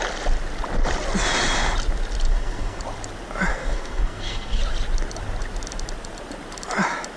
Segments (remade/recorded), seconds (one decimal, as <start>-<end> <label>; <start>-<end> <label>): 0.0-2.3 recorded; 2.3-2.8 remade; 2.8-3.5 recorded; 3.5-4.6 remade; 4.6-7.2 recorded